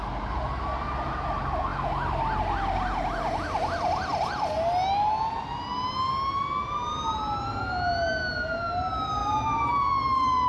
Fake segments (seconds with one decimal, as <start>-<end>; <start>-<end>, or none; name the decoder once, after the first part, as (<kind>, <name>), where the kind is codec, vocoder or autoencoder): none